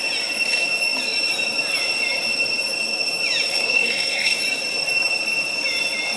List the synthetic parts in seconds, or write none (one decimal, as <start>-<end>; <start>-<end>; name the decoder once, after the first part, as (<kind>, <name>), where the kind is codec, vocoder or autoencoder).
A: 3.5-4.4 (codec, SNAC)